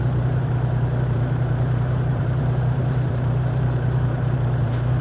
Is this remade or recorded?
remade